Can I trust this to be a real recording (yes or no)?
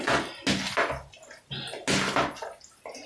yes